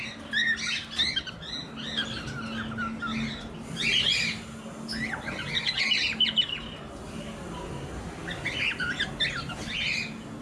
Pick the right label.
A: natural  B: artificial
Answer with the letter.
A